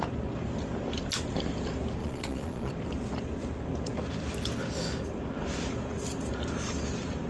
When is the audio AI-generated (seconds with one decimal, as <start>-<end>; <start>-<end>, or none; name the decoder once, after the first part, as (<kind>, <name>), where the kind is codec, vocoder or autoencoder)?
2.0-2.7 (vocoder, Vocos)